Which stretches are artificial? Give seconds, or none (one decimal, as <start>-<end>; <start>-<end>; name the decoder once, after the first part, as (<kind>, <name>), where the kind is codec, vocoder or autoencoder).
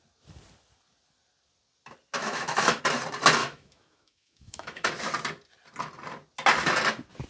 2.2-2.8 (autoencoder, DAC-VAE); 3.4-4.9